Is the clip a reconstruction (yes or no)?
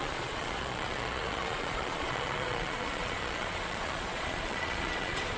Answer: yes